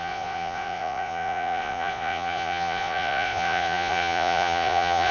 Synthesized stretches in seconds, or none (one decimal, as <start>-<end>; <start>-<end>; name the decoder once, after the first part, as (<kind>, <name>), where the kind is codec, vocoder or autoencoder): 0.0-5.1 (vocoder, Vocos)